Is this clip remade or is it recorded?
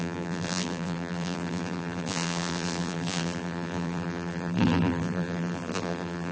remade